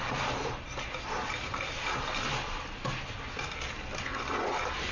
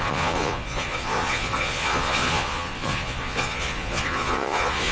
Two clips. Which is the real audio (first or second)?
first